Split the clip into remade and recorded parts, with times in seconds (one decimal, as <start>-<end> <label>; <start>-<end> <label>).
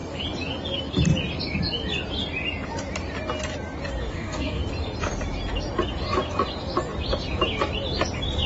0.0-4.1 recorded; 4.1-4.6 remade; 4.6-8.5 recorded